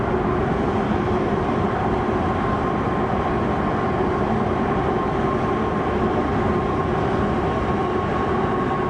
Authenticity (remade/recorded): recorded